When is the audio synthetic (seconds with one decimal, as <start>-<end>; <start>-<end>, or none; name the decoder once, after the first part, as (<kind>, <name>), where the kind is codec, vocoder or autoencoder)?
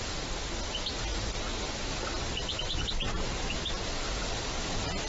none